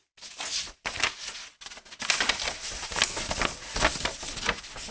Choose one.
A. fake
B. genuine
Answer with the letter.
B